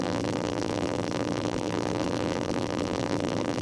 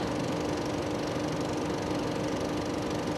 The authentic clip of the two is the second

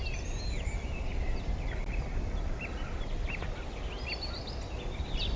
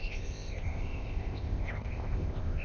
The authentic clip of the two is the first